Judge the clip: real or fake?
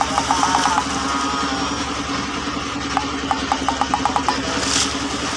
real